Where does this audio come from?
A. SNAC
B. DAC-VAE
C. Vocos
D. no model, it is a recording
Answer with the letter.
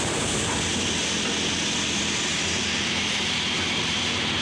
D